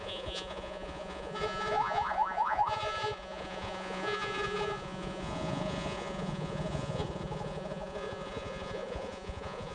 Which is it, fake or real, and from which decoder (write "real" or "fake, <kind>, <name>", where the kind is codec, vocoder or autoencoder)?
fake, vocoder, Vocos